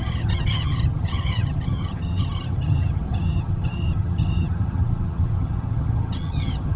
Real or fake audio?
fake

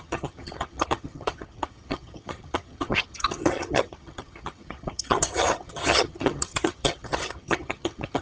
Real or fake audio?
fake